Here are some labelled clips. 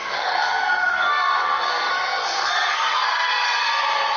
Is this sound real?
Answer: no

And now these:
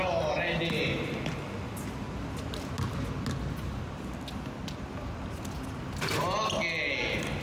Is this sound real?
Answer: yes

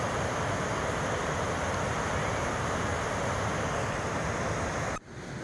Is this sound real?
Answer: yes